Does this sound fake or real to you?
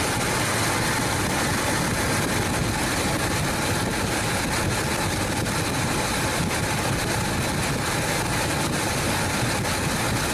real